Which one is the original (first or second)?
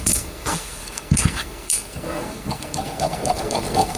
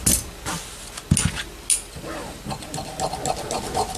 second